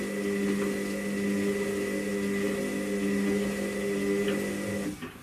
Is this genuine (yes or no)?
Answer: yes